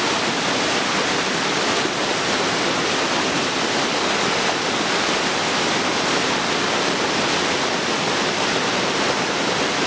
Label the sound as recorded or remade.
recorded